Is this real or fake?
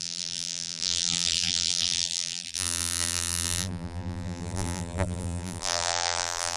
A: fake